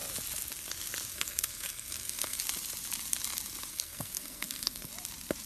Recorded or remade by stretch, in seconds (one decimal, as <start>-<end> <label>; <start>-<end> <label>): 0.0-1.1 recorded; 1.1-2.4 remade; 2.4-3.7 recorded; 3.7-4.9 remade; 4.9-5.5 recorded